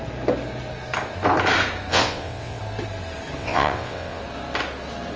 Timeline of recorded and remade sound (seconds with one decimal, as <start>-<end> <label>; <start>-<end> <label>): 0.0-1.9 recorded; 1.9-2.6 remade; 2.6-3.4 recorded; 3.4-4.2 remade; 4.2-5.2 recorded